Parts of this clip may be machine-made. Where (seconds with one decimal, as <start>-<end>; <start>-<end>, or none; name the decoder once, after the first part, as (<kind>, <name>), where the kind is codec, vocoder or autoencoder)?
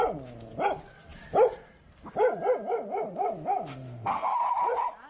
3.7-4.4 (autoencoder, DAC-VAE)